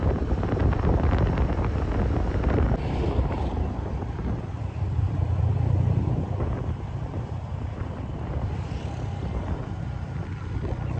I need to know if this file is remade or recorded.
remade